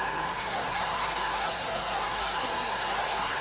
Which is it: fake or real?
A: fake